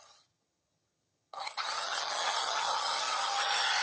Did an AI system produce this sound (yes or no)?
yes